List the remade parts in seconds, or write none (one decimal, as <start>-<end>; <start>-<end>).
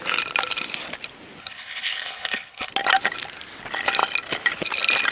1.4-2.7